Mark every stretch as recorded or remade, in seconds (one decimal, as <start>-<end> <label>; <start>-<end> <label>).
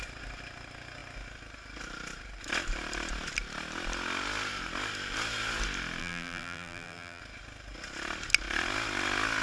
0.0-6.0 recorded; 6.0-7.2 remade; 7.2-9.4 recorded